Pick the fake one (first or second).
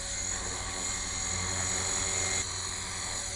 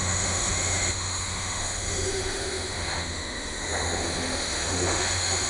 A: second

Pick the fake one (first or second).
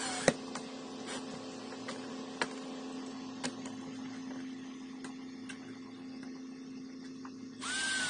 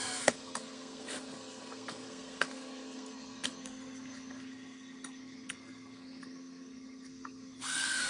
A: second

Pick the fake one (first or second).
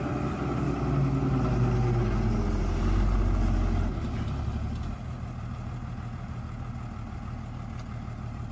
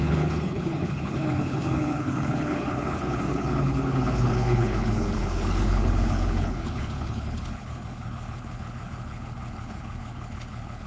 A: second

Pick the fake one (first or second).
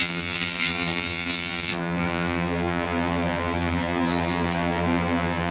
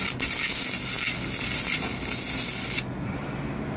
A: first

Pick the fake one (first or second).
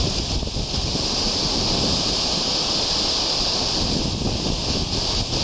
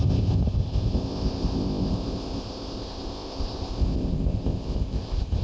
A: second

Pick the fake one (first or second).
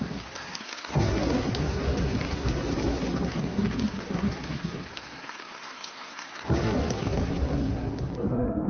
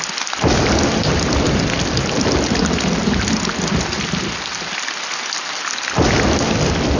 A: first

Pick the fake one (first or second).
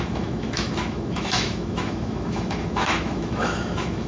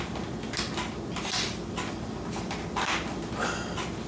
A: first